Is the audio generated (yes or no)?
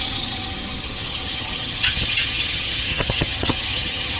yes